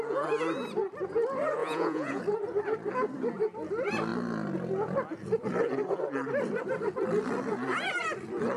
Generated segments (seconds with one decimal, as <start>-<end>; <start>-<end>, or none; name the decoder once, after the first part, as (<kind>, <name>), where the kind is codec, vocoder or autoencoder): 1.6-2.2 (vocoder, Vocos)